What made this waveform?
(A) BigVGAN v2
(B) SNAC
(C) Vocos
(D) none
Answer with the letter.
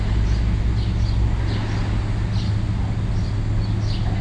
D